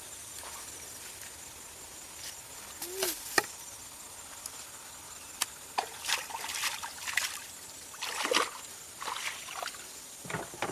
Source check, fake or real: real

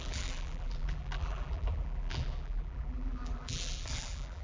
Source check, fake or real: fake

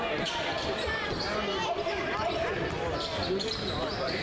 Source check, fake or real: fake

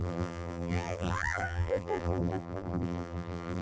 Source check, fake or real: fake